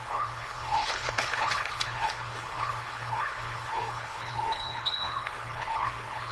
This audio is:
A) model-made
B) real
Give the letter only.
A